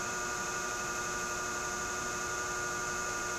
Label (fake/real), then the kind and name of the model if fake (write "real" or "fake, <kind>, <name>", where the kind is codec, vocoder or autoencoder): fake, vocoder, BigVGAN v2